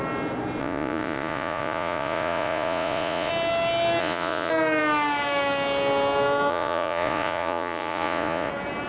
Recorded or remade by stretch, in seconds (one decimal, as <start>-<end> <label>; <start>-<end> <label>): 0.0-0.6 recorded; 0.6-3.3 remade; 3.3-4.0 recorded; 4.0-4.5 remade; 4.5-6.5 recorded; 6.5-8.5 remade; 8.5-8.9 recorded